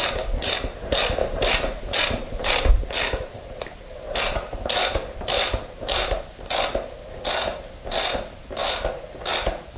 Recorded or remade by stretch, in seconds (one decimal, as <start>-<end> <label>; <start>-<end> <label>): 0.0-1.2 recorded; 1.2-2.7 remade; 2.7-9.8 recorded